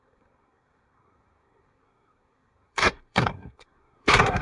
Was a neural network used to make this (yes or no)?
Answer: yes